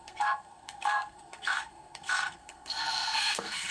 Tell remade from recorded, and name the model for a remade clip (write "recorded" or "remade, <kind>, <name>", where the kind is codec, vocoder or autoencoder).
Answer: remade, codec, SNAC